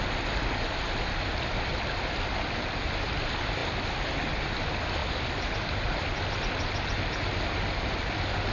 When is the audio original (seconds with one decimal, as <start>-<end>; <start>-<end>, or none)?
0.0-5.0; 6.4-8.5